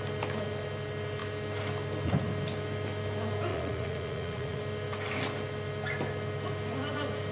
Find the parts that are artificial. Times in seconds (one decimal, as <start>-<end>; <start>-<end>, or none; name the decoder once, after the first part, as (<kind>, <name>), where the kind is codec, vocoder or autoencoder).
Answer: 3.5-4.6 (vocoder, Vocos)